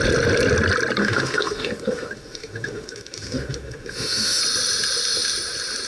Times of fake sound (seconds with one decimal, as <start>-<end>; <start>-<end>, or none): 1.0-4.4